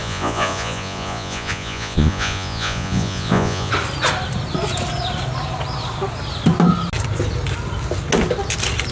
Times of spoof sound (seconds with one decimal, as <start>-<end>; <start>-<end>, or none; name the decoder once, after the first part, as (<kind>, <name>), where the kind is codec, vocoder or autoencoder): 0.0-3.7 (vocoder, Vocos)